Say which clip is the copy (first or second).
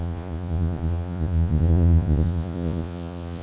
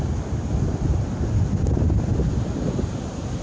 first